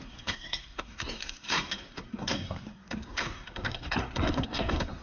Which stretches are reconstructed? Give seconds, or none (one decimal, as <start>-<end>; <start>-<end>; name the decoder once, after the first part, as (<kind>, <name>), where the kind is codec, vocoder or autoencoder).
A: 0.0-5.0 (codec, SNAC)